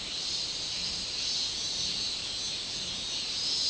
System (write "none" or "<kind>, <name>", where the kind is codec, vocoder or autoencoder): none